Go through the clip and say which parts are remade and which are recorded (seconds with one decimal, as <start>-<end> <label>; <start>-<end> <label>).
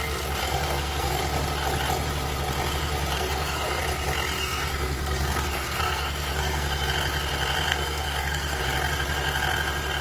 0.0-0.4 recorded; 0.4-1.2 remade; 1.2-3.1 recorded; 3.1-3.8 remade; 3.8-4.4 recorded; 4.4-6.9 remade; 6.9-7.7 recorded; 7.7-8.6 remade; 8.6-10.0 recorded